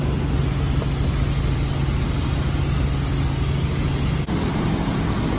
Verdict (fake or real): real